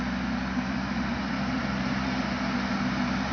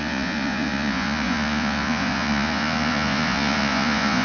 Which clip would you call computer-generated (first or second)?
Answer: second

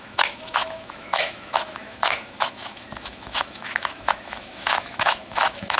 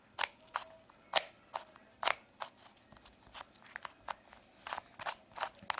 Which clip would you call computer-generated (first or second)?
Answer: first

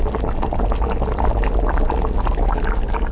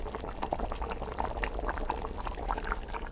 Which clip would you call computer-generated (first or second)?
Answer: second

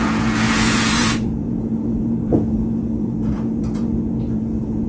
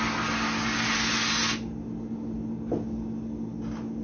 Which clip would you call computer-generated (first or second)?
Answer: first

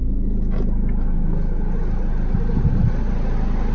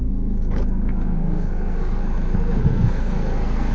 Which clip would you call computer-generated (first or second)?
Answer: second